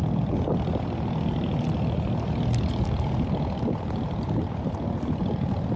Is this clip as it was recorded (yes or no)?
yes